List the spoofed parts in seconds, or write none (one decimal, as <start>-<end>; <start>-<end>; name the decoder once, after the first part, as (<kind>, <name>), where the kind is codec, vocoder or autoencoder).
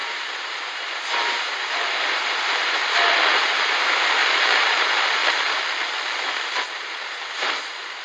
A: 0.0-2.8 (vocoder, BigVGAN v2); 3.4-4.2; 4.8-5.2; 6.7-8.0